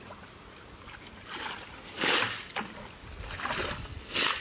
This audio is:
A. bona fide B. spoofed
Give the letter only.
A